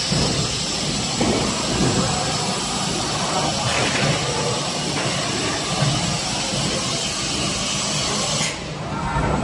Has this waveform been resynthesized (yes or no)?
no